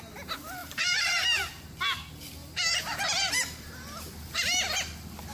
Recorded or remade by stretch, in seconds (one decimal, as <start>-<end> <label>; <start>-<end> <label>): 0.0-0.6 recorded; 0.6-1.8 remade; 1.8-2.4 recorded; 2.4-4.6 remade; 4.6-5.3 recorded

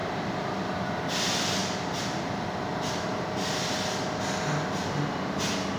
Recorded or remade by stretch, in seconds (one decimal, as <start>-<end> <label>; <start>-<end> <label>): 0.0-0.7 remade; 0.7-5.8 recorded